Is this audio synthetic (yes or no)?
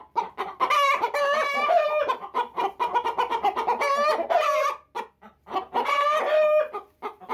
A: no